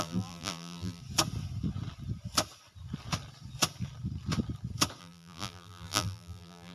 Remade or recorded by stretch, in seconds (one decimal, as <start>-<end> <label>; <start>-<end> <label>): 0.0-1.0 remade; 1.0-5.0 recorded; 5.0-6.7 remade